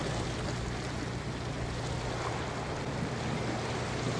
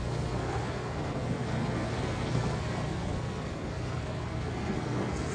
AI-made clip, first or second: second